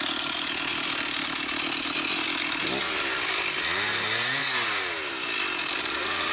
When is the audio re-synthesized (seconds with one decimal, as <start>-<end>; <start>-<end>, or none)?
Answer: none